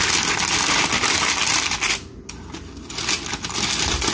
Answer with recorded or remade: recorded